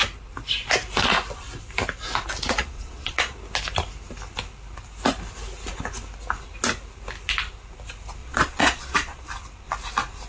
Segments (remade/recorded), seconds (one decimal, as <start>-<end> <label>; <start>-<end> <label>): 0.0-2.6 recorded; 2.6-3.4 remade; 3.4-8.2 recorded; 8.2-9.3 remade; 9.3-10.3 recorded